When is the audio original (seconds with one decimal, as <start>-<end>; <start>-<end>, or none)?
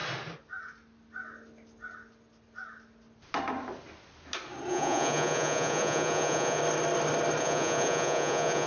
0.0-4.7; 6.6-7.4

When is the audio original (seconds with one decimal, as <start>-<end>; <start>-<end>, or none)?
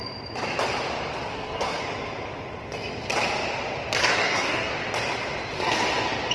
0.0-1.3; 1.8-4.0; 4.7-6.3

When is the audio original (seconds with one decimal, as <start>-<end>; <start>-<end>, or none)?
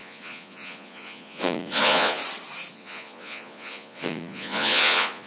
2.2-2.7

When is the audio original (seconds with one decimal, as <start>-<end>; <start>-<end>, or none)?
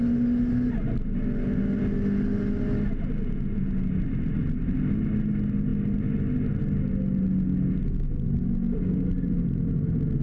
0.0-10.2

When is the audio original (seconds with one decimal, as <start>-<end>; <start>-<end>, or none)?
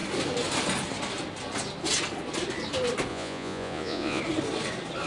0.0-3.1; 4.2-5.1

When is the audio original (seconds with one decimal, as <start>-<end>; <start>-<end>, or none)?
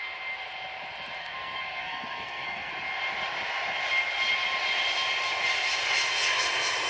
0.0-1.2; 2.7-6.9